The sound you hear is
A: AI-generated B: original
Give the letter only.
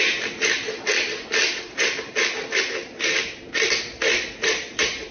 B